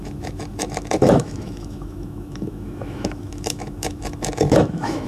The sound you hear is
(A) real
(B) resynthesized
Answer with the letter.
B